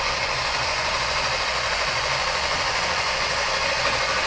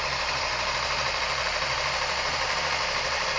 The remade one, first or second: first